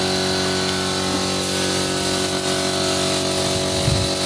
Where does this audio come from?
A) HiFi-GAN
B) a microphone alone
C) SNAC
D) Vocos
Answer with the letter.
B